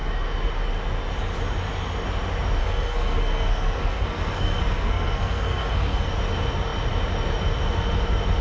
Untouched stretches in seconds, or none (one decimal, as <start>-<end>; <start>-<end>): 0.0-2.6; 6.1-8.4